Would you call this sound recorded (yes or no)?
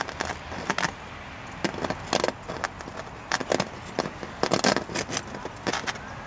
yes